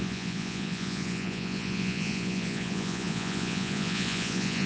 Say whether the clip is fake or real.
fake